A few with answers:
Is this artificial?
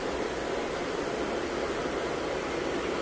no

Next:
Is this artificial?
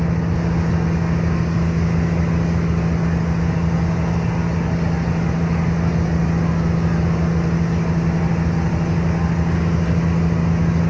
no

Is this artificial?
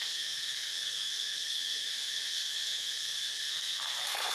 yes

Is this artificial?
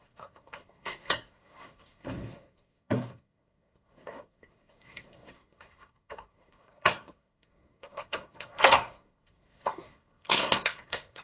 yes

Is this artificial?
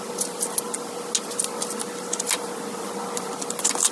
no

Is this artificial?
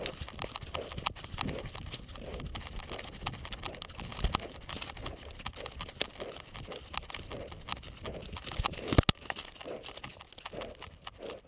no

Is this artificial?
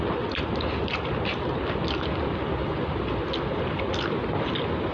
no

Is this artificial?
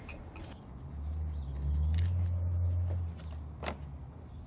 no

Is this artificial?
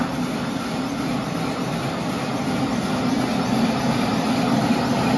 no